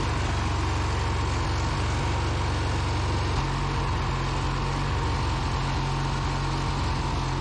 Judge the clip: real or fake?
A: real